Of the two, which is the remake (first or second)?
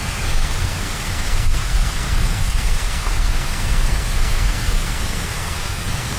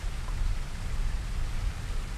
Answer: first